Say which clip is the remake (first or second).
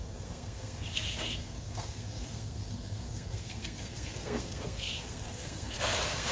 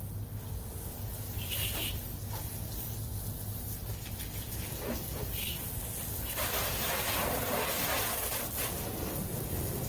first